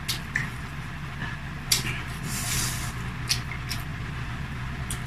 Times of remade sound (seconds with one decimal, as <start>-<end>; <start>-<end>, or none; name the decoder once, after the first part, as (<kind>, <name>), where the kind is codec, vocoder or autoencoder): 1.2-2.9 (vocoder, BigVGAN v2); 3.9-4.5